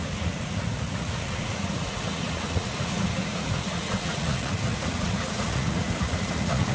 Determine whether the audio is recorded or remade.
remade